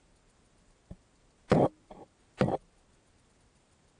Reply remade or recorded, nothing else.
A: recorded